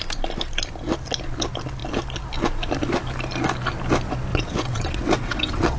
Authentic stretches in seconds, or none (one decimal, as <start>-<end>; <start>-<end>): 0.0-4.3

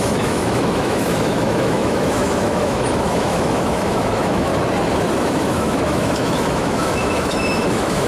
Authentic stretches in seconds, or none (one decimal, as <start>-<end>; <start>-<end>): 4.5-5.2

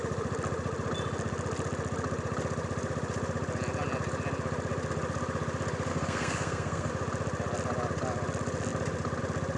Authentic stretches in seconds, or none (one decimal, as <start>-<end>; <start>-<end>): 0.0-5.9; 6.9-9.6

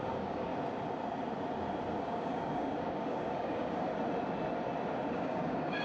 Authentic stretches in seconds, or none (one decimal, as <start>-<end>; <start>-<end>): 0.5-2.0; 3.9-5.1

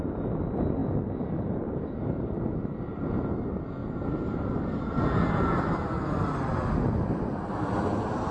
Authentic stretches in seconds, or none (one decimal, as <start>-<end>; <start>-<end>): 0.0-8.3